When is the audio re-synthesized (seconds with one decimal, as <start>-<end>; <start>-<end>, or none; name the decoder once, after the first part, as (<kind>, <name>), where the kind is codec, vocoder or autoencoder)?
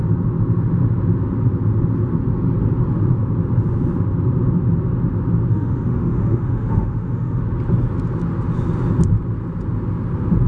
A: 5.5-7.4 (autoencoder, DAC-VAE)